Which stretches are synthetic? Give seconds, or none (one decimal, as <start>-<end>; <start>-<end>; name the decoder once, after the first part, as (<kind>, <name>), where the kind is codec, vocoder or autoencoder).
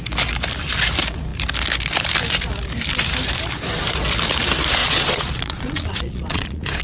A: 4.8-6.8 (vocoder, Vocos)